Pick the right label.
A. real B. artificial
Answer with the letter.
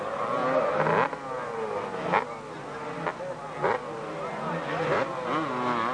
A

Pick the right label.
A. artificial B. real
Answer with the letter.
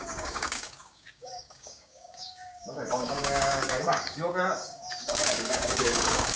A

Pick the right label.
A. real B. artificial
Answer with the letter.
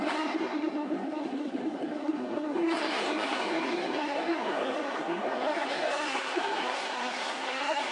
B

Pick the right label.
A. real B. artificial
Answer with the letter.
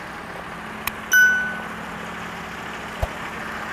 A